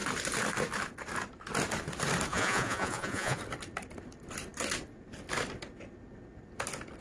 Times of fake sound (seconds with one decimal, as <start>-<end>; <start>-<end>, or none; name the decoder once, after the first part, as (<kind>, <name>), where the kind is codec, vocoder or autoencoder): 2.3-3.4 (vocoder, Vocos)